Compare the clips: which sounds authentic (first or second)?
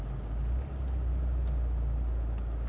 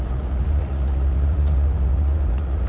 first